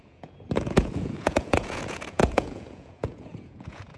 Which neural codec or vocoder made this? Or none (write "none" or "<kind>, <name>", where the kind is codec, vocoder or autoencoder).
vocoder, Vocos